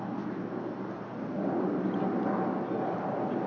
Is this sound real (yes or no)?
yes